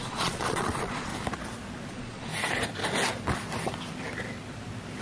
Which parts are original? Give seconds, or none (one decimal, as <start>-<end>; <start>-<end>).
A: 1.1-1.9; 2.3-5.0